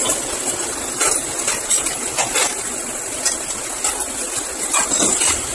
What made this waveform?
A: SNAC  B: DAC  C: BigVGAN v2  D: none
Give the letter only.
D